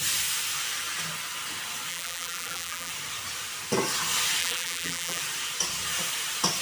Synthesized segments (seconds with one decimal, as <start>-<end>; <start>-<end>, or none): 1.9-2.9; 4.4-5.2